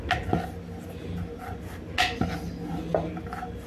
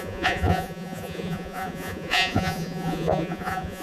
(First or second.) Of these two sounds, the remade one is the second